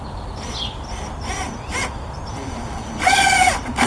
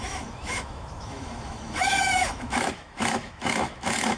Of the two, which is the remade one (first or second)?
second